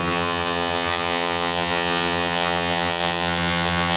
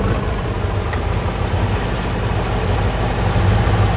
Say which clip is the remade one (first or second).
first